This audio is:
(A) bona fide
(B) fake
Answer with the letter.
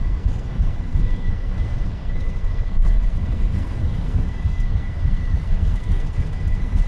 B